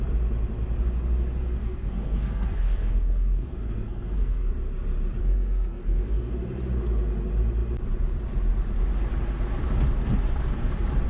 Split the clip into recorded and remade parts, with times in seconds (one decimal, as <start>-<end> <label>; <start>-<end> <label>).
0.0-1.6 recorded; 1.6-4.5 remade; 4.5-5.2 recorded; 5.2-6.3 remade; 6.3-11.1 recorded